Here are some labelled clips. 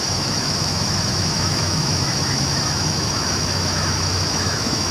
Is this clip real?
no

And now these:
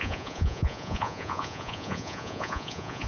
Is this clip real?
no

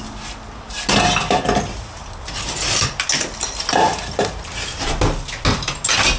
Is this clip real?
yes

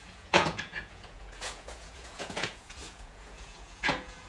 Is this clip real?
no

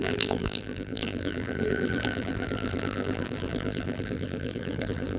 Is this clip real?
no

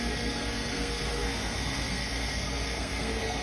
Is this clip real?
no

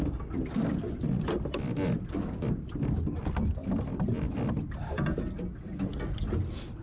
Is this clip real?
yes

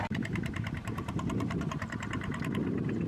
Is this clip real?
no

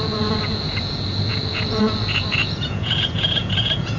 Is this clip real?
no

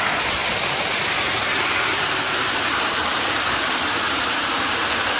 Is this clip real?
yes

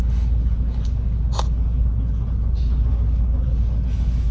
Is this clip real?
yes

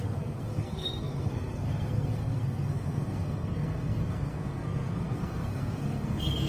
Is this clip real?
no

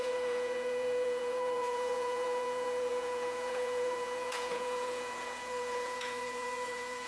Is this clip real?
no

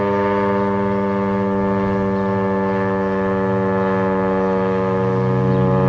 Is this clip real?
yes